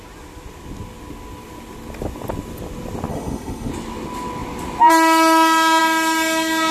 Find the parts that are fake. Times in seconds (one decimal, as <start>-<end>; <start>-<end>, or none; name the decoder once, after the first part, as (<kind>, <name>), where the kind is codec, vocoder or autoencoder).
3.1-3.7 (autoencoder, DAC-VAE)